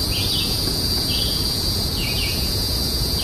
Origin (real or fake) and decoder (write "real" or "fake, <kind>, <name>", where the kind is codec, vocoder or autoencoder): fake, vocoder, Vocos